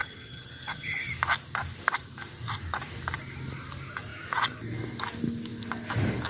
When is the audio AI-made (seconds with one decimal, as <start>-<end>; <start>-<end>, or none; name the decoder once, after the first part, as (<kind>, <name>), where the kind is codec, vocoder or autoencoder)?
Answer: 0.0-1.1 (vocoder, HiFi-GAN)